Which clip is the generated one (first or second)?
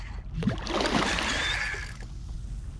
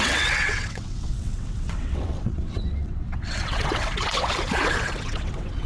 second